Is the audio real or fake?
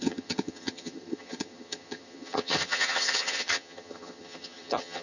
fake